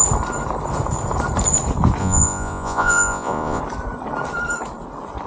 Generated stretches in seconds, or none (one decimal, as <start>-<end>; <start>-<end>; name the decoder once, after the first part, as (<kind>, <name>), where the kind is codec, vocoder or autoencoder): 2.0-3.6 (vocoder, Vocos)